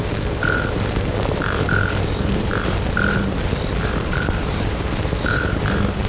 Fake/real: fake